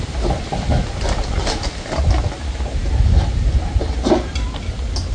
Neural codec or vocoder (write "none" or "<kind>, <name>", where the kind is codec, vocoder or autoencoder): none